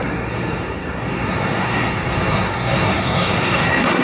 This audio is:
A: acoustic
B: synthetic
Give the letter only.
B